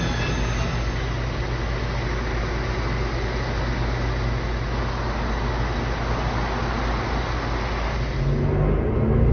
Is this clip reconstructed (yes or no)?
no